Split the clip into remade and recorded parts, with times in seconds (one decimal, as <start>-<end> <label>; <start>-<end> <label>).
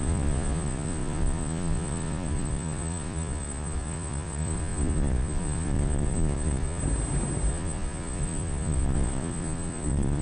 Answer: 0.0-6.8 remade; 6.8-7.5 recorded; 7.5-10.2 remade